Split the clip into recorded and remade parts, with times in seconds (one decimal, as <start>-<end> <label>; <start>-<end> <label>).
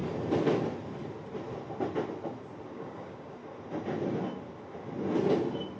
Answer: 0.0-2.7 recorded; 2.7-3.4 remade; 3.4-5.8 recorded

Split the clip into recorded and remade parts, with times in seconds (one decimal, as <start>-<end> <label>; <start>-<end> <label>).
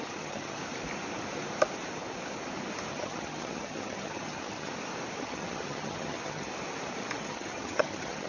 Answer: 0.0-0.6 remade; 0.6-2.9 recorded; 2.9-4.7 remade; 4.7-5.2 recorded; 5.2-6.5 remade; 6.5-7.2 recorded; 7.2-8.3 remade